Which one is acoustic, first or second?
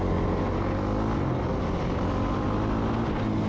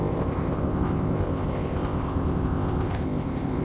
first